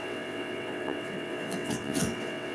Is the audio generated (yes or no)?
yes